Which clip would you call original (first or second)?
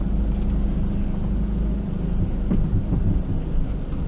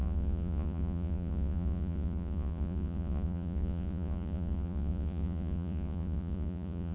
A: first